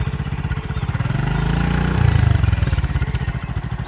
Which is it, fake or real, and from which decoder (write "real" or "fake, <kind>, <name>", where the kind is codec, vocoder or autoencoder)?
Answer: real